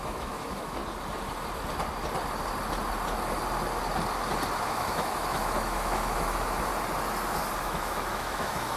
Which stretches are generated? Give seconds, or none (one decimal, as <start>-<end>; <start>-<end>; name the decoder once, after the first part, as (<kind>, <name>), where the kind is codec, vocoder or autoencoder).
0.0-0.8 (autoencoder, DAC-VAE); 4.6-6.7; 7.6-8.8